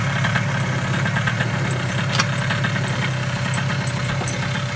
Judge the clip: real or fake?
real